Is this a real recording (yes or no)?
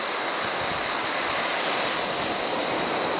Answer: yes